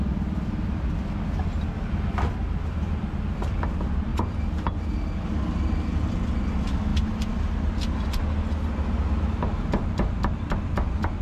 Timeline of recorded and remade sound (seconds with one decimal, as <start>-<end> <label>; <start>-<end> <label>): 0.0-6.9 recorded; 6.9-7.7 remade; 7.7-11.2 recorded